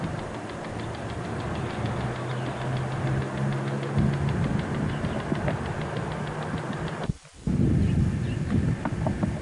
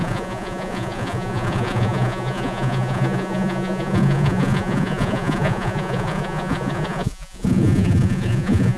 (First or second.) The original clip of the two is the first